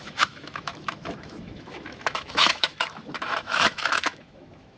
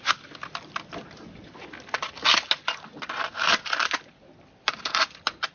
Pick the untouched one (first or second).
second